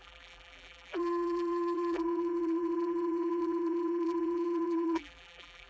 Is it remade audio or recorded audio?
remade